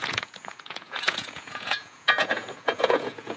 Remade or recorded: remade